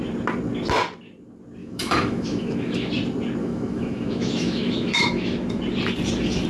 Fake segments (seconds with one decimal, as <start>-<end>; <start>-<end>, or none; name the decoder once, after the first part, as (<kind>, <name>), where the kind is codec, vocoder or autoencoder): 1.6-2.9 (autoencoder, DAC-VAE); 3.4-5.6

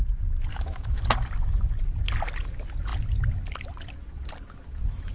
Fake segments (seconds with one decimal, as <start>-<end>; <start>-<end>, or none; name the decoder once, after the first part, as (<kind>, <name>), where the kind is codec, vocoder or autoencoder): 0.5-1.0 (autoencoder, DAC-VAE)

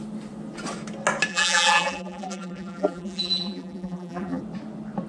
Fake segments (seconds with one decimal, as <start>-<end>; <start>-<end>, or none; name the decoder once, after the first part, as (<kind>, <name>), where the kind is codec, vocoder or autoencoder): 1.3-4.4 (vocoder, BigVGAN v2)

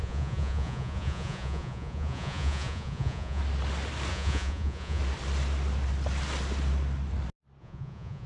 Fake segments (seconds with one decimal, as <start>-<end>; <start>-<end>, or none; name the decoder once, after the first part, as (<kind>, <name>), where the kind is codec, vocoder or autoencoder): 0.0-3.4 (vocoder, Vocos); 4.1-5.0; 7.6-8.3